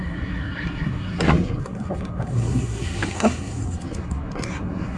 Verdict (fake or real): fake